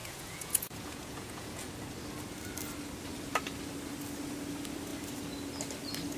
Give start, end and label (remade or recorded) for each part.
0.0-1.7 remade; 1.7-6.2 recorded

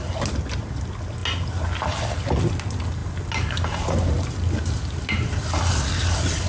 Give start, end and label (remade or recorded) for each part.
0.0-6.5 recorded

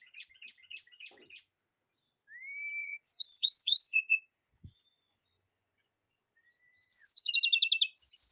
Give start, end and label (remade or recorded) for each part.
0.0-2.8 recorded; 2.8-7.3 remade; 7.3-8.3 recorded

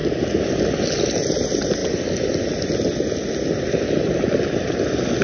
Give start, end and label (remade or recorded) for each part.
0.0-5.2 recorded

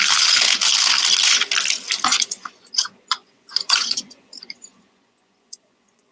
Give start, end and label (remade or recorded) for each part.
0.0-2.1 recorded; 2.1-6.1 remade